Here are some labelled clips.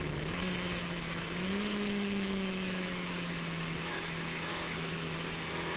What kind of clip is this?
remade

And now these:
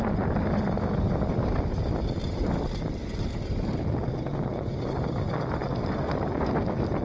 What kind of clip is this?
recorded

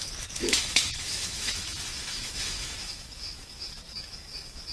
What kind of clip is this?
remade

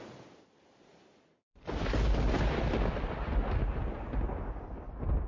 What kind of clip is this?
recorded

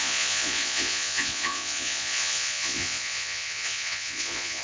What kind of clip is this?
remade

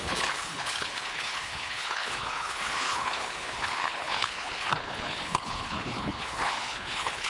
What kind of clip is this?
remade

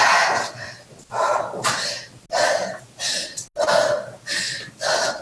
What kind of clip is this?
recorded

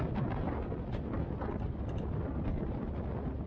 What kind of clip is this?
recorded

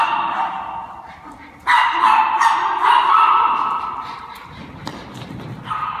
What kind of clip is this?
recorded